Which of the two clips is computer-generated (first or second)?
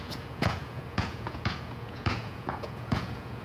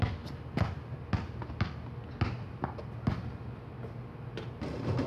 first